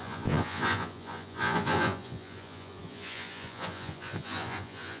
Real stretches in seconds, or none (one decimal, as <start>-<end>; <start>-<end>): none